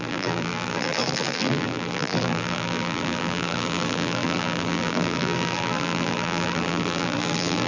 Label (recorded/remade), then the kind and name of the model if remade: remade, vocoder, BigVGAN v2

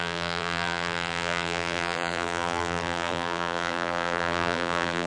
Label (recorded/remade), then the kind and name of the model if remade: remade, vocoder, BigVGAN v2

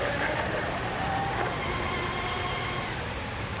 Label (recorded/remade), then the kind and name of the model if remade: recorded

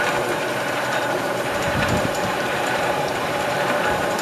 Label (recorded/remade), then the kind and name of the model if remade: remade, vocoder, BigVGAN v2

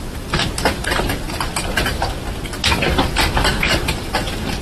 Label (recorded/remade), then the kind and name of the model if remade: remade, vocoder, BigVGAN v2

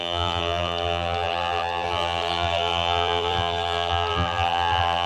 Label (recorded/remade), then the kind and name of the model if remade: remade, vocoder, BigVGAN v2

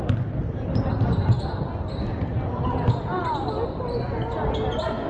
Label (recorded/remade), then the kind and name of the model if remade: recorded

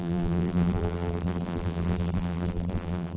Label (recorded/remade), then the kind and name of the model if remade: remade, vocoder, BigVGAN v2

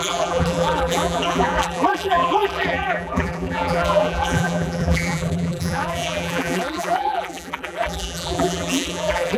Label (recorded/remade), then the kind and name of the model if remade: remade, vocoder, BigVGAN v2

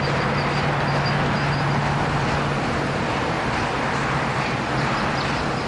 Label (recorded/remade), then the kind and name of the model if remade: recorded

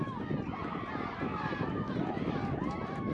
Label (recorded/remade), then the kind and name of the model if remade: remade, vocoder, BigVGAN v2